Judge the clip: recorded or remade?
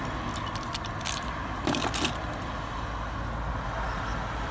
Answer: recorded